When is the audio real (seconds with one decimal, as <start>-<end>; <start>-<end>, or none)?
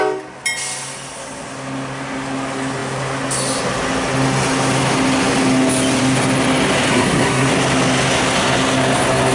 0.0-6.9; 7.5-9.3